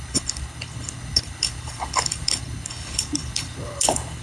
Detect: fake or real fake